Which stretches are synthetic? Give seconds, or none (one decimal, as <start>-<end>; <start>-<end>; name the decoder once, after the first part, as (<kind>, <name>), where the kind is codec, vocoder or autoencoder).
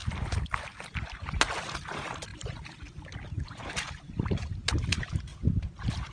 2.3-3.6 (vocoder, BigVGAN v2)